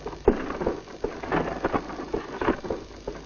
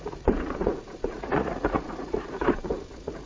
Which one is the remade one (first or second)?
second